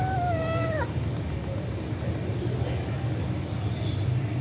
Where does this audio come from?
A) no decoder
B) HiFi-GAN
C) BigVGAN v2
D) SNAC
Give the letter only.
A